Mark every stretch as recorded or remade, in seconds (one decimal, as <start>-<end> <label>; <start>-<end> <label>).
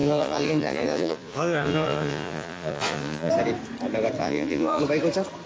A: 0.0-3.3 remade; 3.3-4.2 recorded; 4.2-4.8 remade; 4.8-5.5 recorded